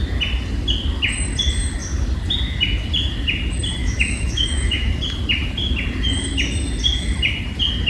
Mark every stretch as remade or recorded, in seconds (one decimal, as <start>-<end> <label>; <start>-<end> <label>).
0.0-3.8 recorded; 3.8-4.9 remade; 4.9-7.9 recorded